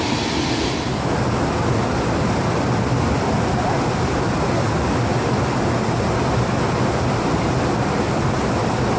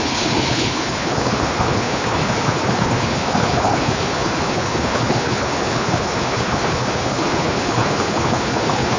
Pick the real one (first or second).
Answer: first